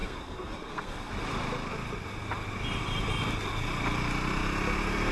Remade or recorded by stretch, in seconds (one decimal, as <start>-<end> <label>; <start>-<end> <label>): 0.0-1.1 remade; 1.1-5.1 recorded